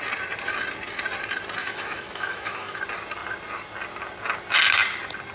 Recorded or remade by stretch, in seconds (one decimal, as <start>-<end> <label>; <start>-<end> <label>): 0.0-1.6 recorded; 1.6-2.8 remade; 2.8-5.3 recorded